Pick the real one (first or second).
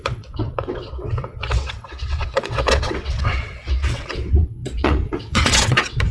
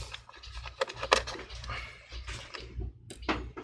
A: second